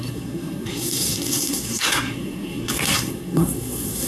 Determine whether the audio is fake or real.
fake